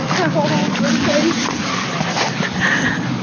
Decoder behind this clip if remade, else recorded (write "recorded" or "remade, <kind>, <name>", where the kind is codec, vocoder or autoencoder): recorded